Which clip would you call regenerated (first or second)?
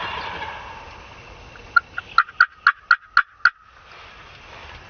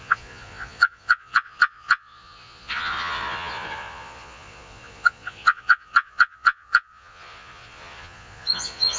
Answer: second